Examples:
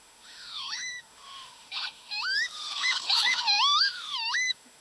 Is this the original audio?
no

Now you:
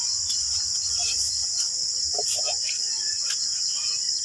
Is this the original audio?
no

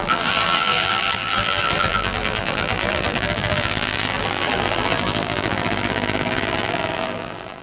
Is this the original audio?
no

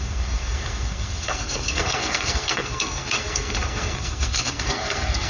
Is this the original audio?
no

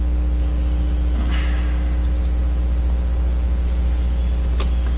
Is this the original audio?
yes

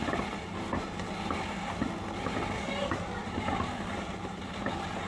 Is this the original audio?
yes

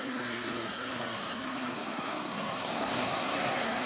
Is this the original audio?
no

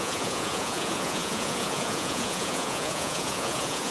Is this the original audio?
no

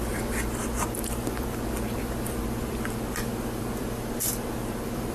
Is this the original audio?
no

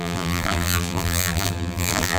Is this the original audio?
no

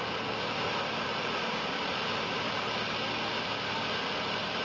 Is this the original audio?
yes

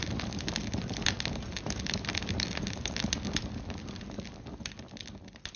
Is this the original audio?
yes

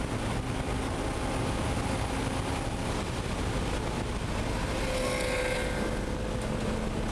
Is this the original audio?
yes